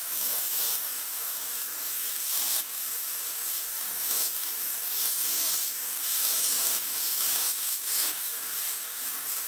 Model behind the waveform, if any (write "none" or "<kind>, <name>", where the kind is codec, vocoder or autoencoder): codec, DAC